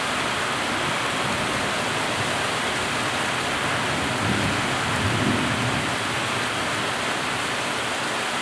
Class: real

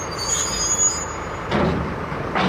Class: real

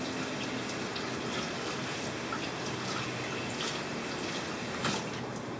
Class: real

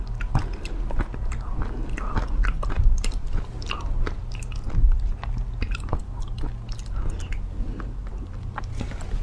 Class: real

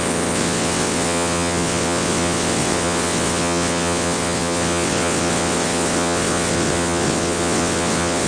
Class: fake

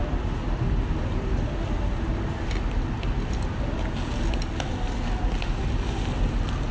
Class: real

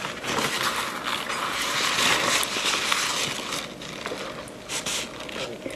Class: real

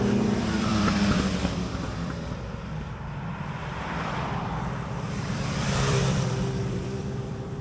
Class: fake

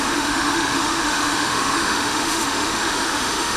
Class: fake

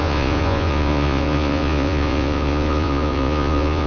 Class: fake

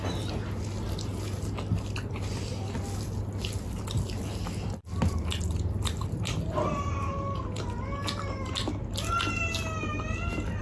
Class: real